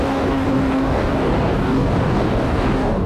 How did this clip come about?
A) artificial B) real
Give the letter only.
A